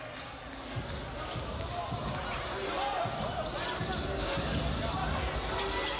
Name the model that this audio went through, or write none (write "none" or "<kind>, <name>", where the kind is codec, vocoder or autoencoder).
none